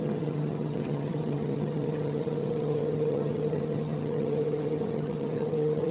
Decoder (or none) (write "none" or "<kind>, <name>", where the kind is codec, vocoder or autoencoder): vocoder, HiFi-GAN